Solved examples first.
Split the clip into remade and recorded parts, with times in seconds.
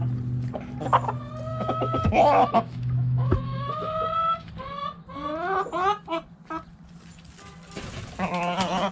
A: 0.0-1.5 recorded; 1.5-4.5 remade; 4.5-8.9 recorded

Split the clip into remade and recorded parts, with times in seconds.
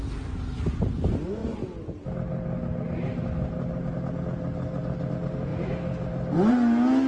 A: 0.0-7.1 recorded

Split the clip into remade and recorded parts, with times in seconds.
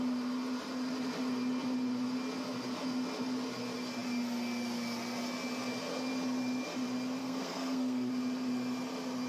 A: 0.0-7.2 recorded; 7.2-8.1 remade; 8.1-9.3 recorded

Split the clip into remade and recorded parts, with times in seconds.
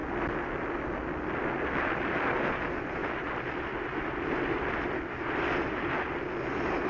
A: 0.0-6.9 recorded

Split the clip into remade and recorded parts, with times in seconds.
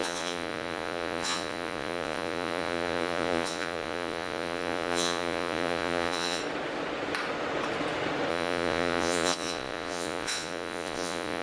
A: 0.0-6.4 remade; 6.4-8.3 recorded; 8.3-11.4 remade